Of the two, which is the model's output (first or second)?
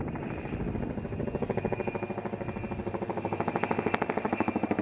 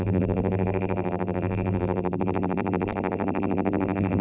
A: second